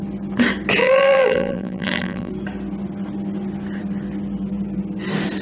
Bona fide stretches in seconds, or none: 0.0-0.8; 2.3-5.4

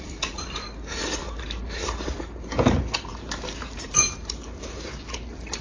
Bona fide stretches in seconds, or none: 0.0-1.2; 2.2-3.1; 4.9-5.6